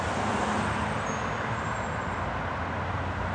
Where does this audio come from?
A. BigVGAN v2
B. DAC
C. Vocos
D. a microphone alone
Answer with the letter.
D